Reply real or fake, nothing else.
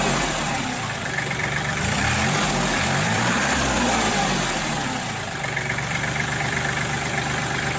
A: fake